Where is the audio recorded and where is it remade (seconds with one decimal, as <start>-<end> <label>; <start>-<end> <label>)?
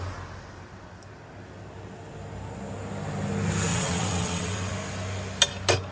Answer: 0.0-3.7 recorded; 3.7-4.7 remade; 4.7-5.9 recorded